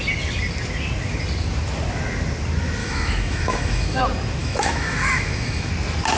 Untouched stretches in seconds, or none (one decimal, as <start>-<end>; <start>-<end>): 0.0-2.8; 4.0-4.4; 5.7-6.2